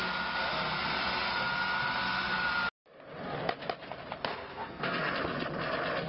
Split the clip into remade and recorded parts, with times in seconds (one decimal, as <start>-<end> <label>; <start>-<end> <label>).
0.0-4.3 recorded; 4.3-5.1 remade; 5.1-6.1 recorded